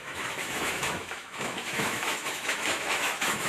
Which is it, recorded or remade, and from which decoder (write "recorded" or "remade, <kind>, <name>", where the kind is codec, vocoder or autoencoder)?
remade, autoencoder, DAC-VAE